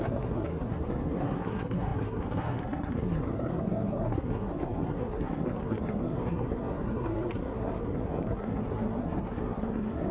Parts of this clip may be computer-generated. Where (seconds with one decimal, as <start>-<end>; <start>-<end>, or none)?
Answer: 0.0-10.1